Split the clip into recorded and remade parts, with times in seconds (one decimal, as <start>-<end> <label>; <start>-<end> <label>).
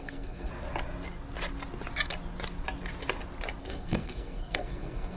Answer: 0.0-0.5 remade; 0.5-3.6 recorded; 3.6-5.2 remade